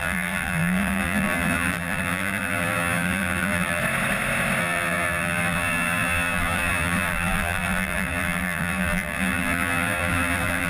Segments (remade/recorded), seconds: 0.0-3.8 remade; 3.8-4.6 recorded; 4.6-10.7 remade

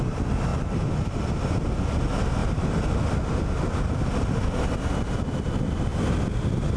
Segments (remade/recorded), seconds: 0.0-6.8 recorded

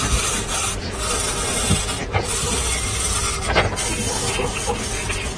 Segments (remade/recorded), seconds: 0.0-5.4 recorded

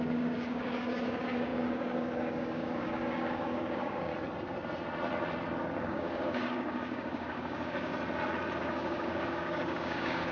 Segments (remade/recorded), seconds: 0.0-4.1 remade; 4.1-5.8 recorded; 5.8-7.9 remade; 7.9-8.6 recorded; 8.6-10.3 remade

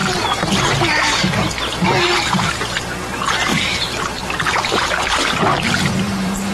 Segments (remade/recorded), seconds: 0.0-2.0 recorded; 2.0-6.5 remade

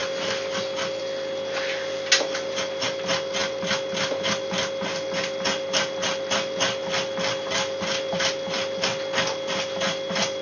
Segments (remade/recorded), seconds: 0.0-10.4 recorded

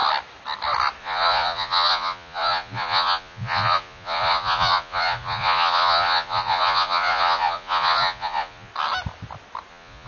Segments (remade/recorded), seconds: 0.0-1.0 recorded; 1.0-8.7 remade; 8.7-9.7 recorded; 9.7-10.1 remade